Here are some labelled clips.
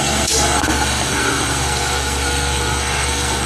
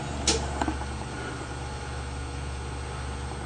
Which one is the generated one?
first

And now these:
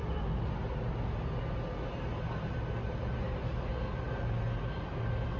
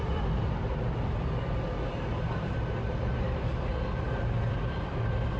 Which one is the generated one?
second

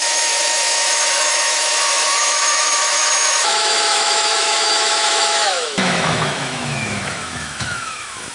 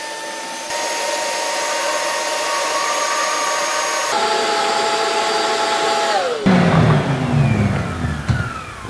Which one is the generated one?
first